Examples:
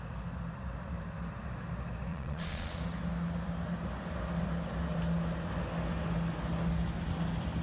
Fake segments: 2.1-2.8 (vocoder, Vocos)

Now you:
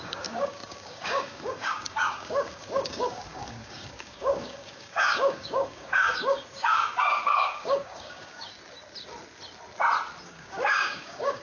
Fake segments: 0.0-8.5 (codec, DAC); 10.2-11.4

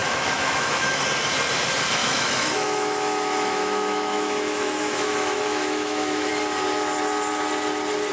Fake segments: 0.0-1.0 (autoencoder, DAC-VAE); 2.0-6.3

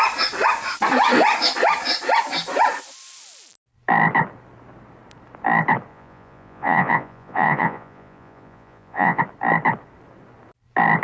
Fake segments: 5.9-9.2 (vocoder, Vocos)

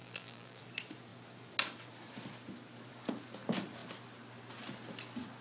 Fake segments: 0.0-0.6 (vocoder, BigVGAN v2)